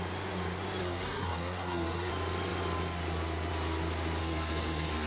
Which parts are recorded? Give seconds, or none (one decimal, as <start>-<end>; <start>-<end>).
0.0-0.8; 2.1-4.2